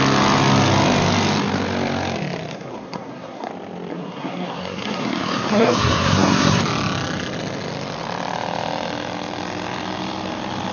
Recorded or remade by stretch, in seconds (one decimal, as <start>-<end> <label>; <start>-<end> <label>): 0.0-2.5 recorded; 2.5-3.5 remade; 3.5-3.9 recorded; 3.9-6.6 remade; 6.6-10.7 recorded